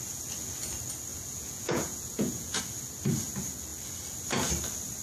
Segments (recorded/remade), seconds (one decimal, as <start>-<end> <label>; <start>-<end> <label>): 0.0-1.1 recorded; 1.1-2.6 remade; 2.6-5.0 recorded